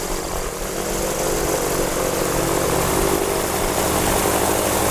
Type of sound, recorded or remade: recorded